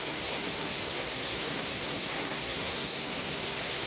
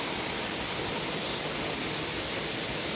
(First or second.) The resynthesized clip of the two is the first